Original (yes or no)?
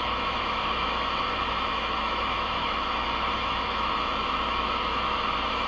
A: no